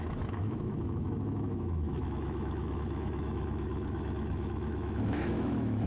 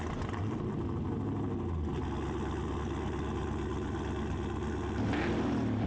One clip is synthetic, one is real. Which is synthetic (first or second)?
first